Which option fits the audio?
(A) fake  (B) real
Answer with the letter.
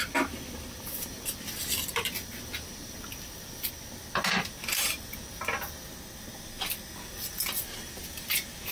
B